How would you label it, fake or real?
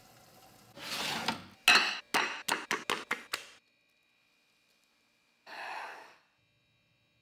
real